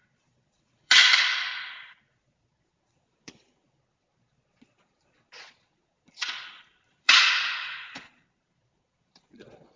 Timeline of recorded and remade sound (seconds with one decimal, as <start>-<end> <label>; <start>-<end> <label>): 0.0-1.0 remade; 1.0-2.0 recorded; 2.0-9.8 remade